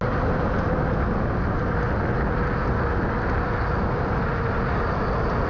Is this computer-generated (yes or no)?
no